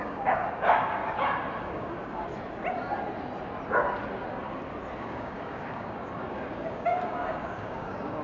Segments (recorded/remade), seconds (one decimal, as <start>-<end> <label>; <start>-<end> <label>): 0.0-1.0 remade; 1.0-1.6 recorded; 1.6-2.3 remade; 2.3-5.0 recorded; 5.0-8.2 remade